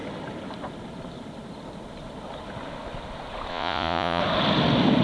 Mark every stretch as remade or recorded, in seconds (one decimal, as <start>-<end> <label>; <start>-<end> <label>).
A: 0.0-3.5 recorded; 3.5-4.2 remade; 4.2-5.0 recorded